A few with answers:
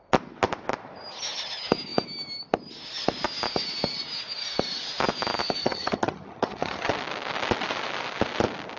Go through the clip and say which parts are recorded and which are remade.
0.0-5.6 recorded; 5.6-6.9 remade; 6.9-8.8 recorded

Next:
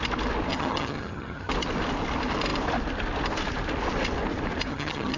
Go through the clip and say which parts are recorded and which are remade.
0.0-0.5 recorded; 0.5-1.5 remade; 1.5-4.7 recorded; 4.7-5.2 remade

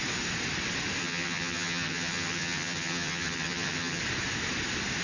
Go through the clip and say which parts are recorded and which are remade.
0.0-1.0 recorded; 1.0-4.0 remade; 4.0-5.0 recorded

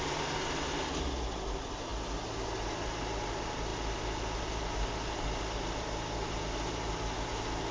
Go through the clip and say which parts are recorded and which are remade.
0.0-7.7 recorded

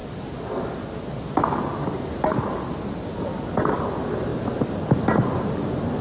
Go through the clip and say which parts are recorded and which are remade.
0.0-6.0 recorded

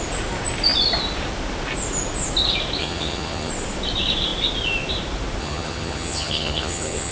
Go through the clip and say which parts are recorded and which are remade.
0.0-2.8 recorded; 2.8-3.5 remade; 3.5-5.4 recorded; 5.4-7.1 remade

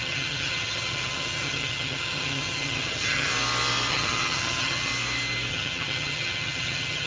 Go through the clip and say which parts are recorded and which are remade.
0.0-3.3 remade; 3.3-3.9 recorded; 3.9-4.9 remade; 4.9-5.5 recorded; 5.5-7.1 remade